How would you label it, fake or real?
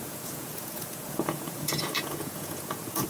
fake